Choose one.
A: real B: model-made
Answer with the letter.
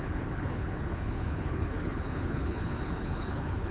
B